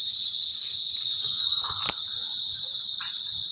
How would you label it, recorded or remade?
recorded